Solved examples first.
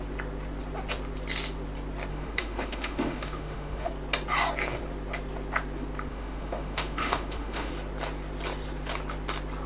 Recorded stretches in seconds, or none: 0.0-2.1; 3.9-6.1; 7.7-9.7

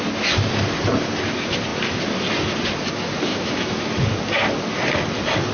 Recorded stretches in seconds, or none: 0.0-3.3; 3.8-5.5

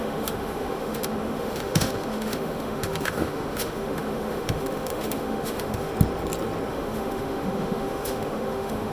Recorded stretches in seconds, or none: 5.9-6.7

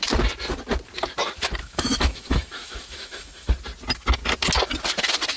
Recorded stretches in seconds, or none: 0.0-1.6; 3.5-5.4